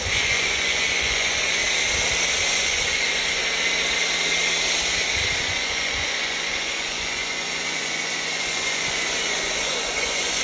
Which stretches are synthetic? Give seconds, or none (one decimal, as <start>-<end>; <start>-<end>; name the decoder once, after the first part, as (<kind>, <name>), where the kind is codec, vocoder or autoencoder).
0.0-1.6 (vocoder, Vocos); 2.5-3.4; 5.4-10.4